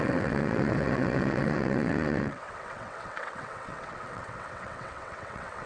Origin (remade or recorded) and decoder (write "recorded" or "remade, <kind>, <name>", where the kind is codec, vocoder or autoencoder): remade, vocoder, WaveNeXt